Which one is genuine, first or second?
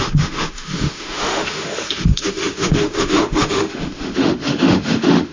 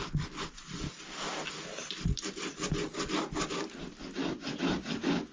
second